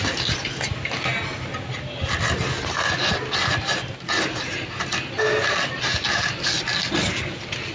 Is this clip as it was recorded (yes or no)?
yes